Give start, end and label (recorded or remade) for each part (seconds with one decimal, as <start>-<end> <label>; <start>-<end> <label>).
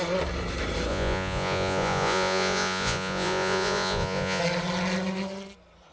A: 0.0-0.9 recorded; 0.9-4.4 remade; 4.4-5.9 recorded